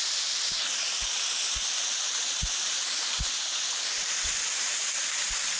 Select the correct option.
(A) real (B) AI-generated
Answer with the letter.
A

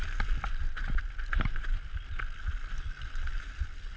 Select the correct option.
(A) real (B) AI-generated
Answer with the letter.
A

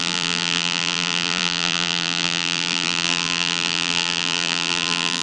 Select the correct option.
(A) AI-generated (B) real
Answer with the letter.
A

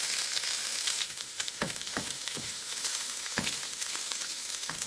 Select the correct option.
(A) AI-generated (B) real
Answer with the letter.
A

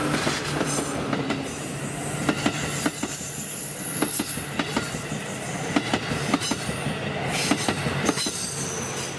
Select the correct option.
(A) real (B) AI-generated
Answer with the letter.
A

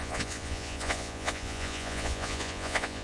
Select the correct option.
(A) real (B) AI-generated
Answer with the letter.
B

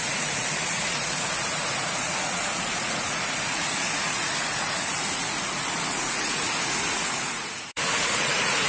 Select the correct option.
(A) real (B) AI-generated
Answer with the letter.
B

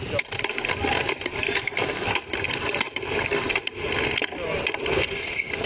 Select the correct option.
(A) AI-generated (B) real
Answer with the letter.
B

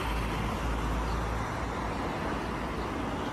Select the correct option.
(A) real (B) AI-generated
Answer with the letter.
A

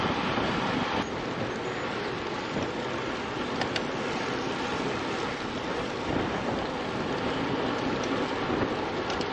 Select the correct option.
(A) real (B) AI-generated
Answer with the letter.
A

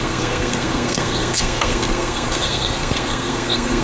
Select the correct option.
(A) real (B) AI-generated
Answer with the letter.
B